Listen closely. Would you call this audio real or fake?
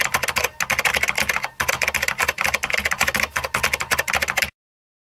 real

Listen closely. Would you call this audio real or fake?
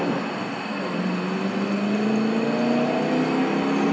real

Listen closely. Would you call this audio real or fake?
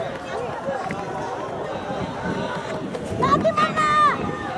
real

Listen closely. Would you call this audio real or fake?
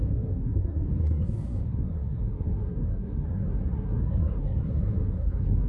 fake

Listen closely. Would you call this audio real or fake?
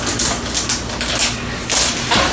real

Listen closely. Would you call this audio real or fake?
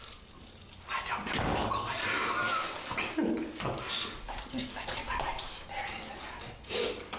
real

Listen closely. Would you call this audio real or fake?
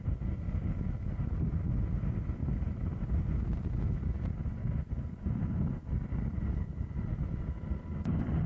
real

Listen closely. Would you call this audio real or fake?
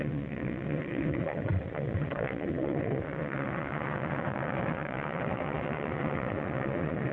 fake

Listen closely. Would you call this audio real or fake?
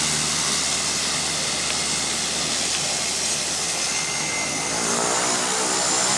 real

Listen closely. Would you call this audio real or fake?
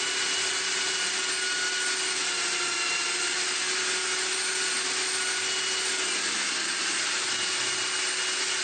real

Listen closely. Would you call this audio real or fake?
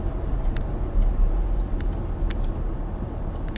real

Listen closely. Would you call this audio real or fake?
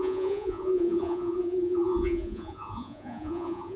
fake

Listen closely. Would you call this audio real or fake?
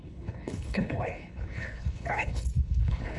fake